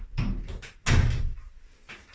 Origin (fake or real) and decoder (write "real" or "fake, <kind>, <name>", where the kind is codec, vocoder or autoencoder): real